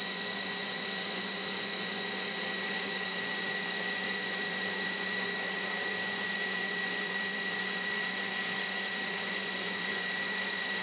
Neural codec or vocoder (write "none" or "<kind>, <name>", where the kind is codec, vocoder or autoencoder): vocoder, Vocos